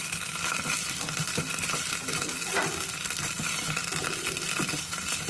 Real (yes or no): yes